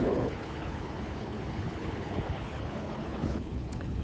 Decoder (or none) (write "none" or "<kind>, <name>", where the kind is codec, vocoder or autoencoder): codec, HILCodec